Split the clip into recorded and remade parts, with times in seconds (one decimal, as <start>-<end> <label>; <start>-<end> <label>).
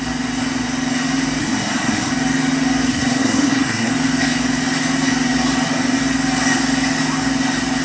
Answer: 0.0-1.4 recorded; 1.4-2.1 remade; 2.1-2.9 recorded; 2.9-3.9 remade; 3.9-7.8 recorded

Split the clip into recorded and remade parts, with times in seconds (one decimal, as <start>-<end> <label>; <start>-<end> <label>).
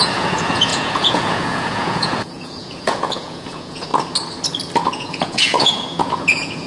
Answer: 0.0-3.9 remade; 3.9-4.8 recorded; 4.8-6.7 remade